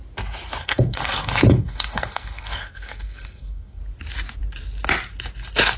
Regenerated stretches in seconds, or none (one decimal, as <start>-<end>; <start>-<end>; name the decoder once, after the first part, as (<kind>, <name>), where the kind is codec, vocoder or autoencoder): 0.6-3.8 (codec, SNAC)